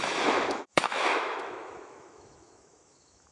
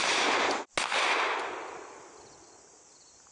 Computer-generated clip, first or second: first